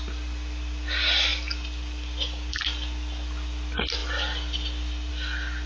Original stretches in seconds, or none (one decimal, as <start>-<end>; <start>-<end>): 0.0-5.7